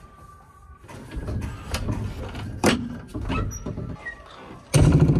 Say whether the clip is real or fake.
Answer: fake